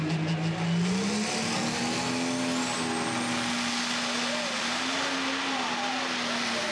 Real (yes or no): yes